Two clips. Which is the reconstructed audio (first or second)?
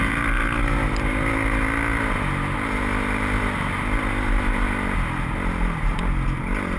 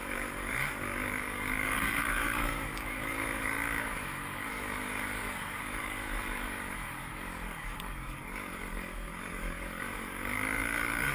second